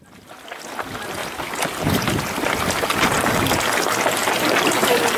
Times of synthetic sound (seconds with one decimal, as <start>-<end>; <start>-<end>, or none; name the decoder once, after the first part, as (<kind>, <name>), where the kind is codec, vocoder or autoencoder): none